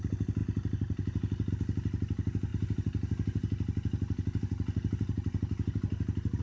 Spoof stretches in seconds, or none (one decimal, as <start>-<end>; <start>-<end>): none